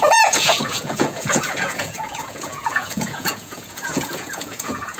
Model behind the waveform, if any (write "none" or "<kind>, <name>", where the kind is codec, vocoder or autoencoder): vocoder, Vocos